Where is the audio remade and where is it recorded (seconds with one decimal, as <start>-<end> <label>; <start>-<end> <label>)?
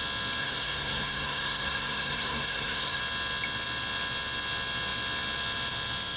0.0-0.4 recorded; 0.4-3.0 remade; 3.0-6.2 recorded